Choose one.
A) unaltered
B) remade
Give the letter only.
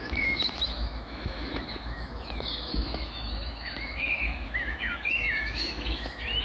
B